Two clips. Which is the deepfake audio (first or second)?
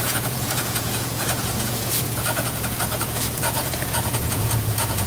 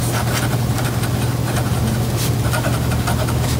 first